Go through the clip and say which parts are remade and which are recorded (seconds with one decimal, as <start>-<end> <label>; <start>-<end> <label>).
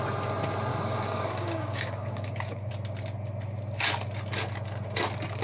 0.0-0.7 recorded; 0.7-2.7 remade; 2.7-5.4 recorded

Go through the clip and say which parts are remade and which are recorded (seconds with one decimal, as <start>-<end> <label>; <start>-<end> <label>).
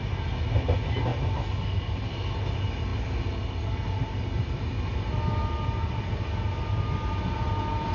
0.0-7.9 recorded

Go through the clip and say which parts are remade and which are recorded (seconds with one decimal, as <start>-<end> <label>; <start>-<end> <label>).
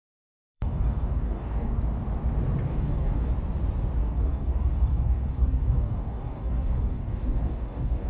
0.0-1.8 remade; 1.8-2.7 recorded; 2.7-3.3 remade; 3.3-4.0 recorded; 4.0-8.1 remade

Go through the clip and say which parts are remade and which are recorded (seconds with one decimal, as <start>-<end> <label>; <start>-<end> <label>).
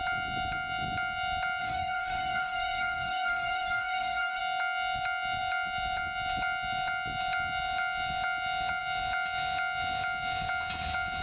0.0-1.6 recorded; 1.6-4.4 remade; 4.4-11.2 recorded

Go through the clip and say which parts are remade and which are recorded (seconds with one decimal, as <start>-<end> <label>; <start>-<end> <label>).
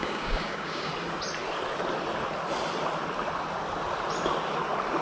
0.0-0.9 remade; 0.9-5.0 recorded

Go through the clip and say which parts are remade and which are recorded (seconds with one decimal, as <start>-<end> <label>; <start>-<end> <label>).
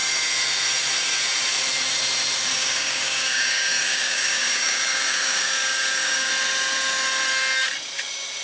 0.0-2.5 recorded; 2.5-6.3 remade; 6.3-8.4 recorded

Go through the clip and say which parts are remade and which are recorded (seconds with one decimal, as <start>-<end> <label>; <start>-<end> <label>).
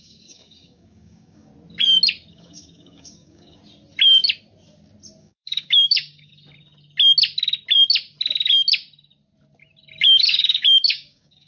0.0-1.5 remade; 1.5-2.3 recorded; 2.3-3.6 remade; 3.6-5.2 recorded; 5.2-6.3 remade; 6.3-10.0 recorded; 10.0-11.5 remade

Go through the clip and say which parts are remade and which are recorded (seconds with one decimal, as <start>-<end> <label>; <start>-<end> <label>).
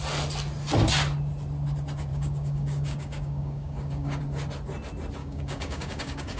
0.0-2.1 recorded; 2.1-4.2 remade; 4.2-5.2 recorded; 5.2-6.4 remade